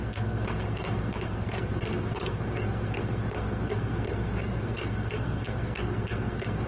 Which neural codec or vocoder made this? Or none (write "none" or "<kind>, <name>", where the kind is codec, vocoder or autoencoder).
codec, SNAC